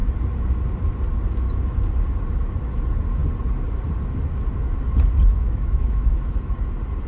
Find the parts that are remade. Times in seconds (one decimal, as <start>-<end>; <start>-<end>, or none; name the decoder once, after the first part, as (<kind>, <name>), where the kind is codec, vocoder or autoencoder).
5.3-6.5 (autoencoder, DAC-VAE)